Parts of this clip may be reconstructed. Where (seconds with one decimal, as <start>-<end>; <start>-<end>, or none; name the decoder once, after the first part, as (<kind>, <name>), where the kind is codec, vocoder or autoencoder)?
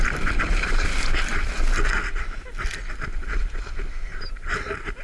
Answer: 0.0-1.3 (vocoder, BigVGAN v2); 4.3-5.0